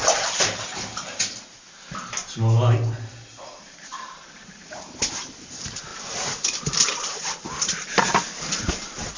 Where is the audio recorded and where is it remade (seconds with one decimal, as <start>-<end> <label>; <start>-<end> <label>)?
0.0-1.2 remade; 1.2-3.1 recorded; 3.1-5.1 remade; 5.1-5.9 recorded; 5.9-8.7 remade; 8.7-9.2 recorded